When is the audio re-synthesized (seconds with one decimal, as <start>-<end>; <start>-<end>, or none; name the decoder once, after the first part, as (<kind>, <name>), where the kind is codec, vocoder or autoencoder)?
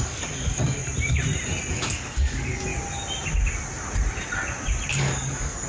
0.0-0.8 (codec, DAC); 1.7-2.7; 4.9-5.7